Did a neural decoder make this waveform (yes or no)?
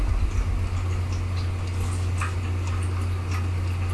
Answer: no